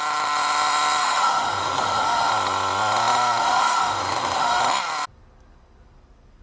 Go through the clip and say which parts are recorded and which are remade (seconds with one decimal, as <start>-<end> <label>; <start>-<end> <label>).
0.0-1.0 recorded; 1.0-2.3 remade; 2.3-3.4 recorded; 3.4-4.6 remade; 4.6-6.4 recorded